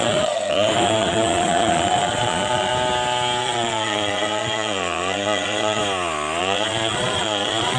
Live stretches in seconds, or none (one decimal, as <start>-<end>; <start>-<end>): 2.7-3.4; 5.8-6.4